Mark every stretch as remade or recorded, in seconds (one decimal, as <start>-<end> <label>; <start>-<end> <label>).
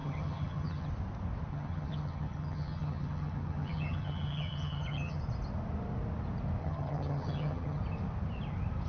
0.0-0.9 remade; 0.9-1.5 recorded; 1.5-5.2 remade; 5.2-6.6 recorded; 6.6-7.8 remade; 7.8-8.9 recorded